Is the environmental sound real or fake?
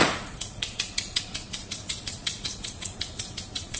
fake